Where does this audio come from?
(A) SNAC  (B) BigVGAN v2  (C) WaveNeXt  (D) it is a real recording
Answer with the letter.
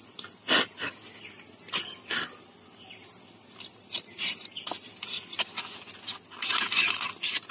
B